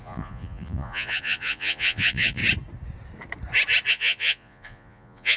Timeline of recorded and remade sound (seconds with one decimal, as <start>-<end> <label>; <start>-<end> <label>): 0.0-2.4 remade; 2.4-3.9 recorded; 3.9-5.4 remade